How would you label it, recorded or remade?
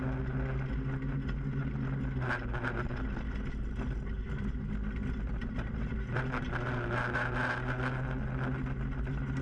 recorded